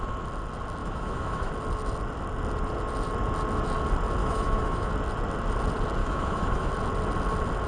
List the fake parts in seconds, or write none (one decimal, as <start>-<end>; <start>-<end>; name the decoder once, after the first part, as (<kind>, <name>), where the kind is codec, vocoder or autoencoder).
0.8-1.5 (autoencoder, DAC-VAE); 4.2-4.9; 6.0-6.7